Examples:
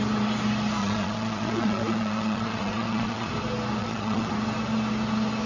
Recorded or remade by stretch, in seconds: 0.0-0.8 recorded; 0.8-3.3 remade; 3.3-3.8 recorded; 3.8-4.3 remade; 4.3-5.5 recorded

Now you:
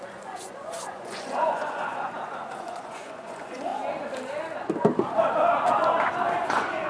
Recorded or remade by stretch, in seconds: 0.0-3.7 remade; 3.7-6.1 recorded; 6.1-6.9 remade

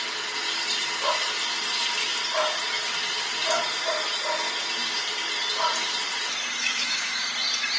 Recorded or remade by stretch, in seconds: 0.0-6.6 recorded; 6.6-7.2 remade; 7.2-7.8 recorded